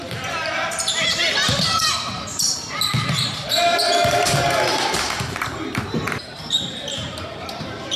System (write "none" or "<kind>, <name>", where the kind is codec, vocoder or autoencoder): vocoder, BigVGAN v2